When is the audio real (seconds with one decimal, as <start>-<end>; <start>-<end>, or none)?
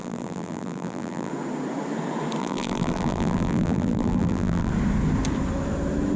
1.3-2.4; 4.7-6.2